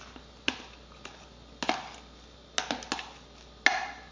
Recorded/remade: recorded